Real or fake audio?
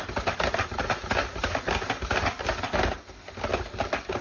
real